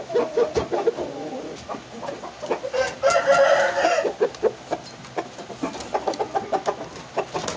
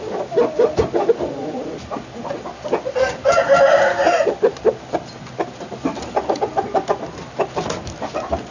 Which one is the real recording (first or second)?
first